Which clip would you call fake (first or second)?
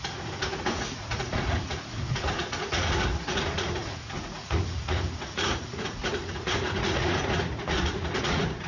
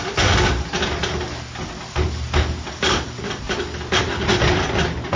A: first